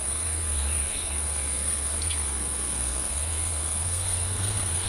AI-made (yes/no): yes